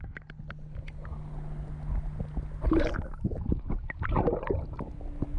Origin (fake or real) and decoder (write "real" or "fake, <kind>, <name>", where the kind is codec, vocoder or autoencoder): real